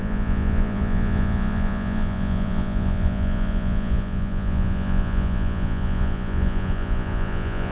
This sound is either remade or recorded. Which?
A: remade